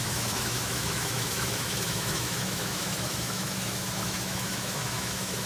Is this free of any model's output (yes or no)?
no